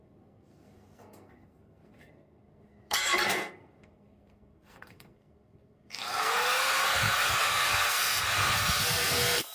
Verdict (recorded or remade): remade